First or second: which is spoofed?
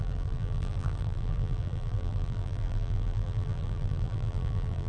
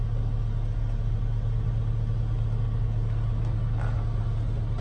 first